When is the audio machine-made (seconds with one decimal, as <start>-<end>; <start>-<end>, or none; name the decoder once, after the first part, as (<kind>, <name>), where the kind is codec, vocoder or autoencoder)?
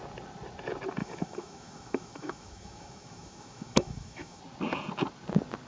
1.0-4.4 (autoencoder, DAC-VAE)